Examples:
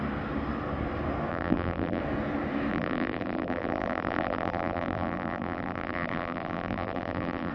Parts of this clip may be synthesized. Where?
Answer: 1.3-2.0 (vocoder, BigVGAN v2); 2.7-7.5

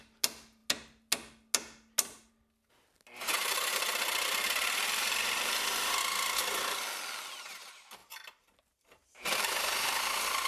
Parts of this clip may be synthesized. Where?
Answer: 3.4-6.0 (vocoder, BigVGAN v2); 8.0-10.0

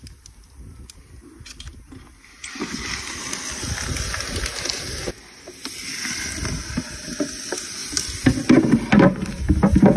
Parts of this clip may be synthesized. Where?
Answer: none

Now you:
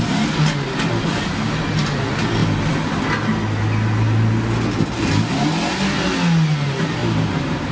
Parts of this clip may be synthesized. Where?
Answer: 7.0-7.7 (vocoder, BigVGAN v2)

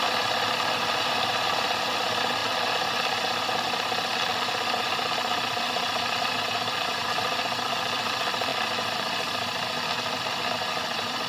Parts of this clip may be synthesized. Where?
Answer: 0.0-2.4 (vocoder, BigVGAN v2); 6.9-11.3